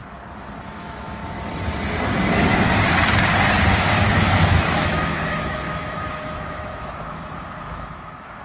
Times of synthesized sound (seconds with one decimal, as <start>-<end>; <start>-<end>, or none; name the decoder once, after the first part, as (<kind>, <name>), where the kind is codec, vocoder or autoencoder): 0.6-1.2 (autoencoder, DAC-VAE); 3.9-8.4